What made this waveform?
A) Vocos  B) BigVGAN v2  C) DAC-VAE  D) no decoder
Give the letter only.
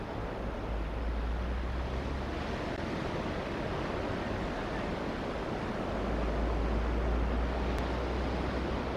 D